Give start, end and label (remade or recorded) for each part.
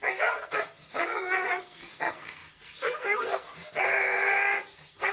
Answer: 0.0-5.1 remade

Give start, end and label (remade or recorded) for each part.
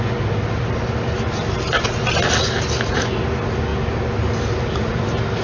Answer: 0.0-5.4 recorded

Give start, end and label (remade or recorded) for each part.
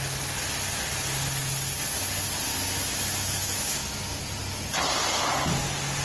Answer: 0.0-2.5 recorded; 2.5-4.2 remade; 4.2-6.0 recorded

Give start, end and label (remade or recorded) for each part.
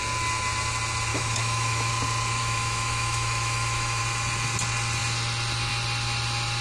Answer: 0.0-1.1 recorded; 1.1-1.9 remade; 1.9-2.4 recorded; 2.4-4.0 remade; 4.0-6.6 recorded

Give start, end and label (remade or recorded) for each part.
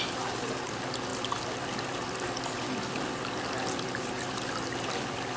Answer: 0.0-5.4 recorded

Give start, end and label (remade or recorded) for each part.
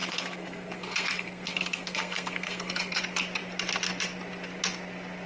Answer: 0.0-3.0 remade; 3.0-5.3 recorded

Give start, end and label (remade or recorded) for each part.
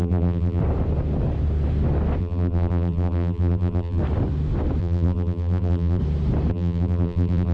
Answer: 0.0-0.6 remade; 0.6-2.2 recorded; 2.2-4.0 remade; 4.0-4.8 recorded; 4.8-6.0 remade; 6.0-6.5 recorded; 6.5-7.5 remade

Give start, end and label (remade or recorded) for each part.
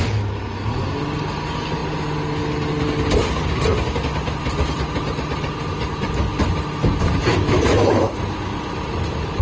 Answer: 0.0-7.3 recorded; 7.3-8.0 remade; 8.0-9.4 recorded